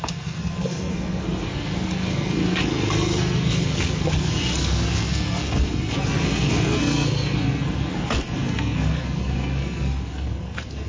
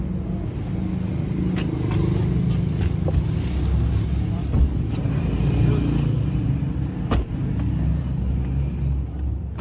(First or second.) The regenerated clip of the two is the first